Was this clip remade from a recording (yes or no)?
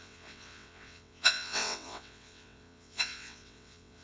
yes